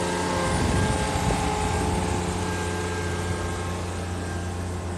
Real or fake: real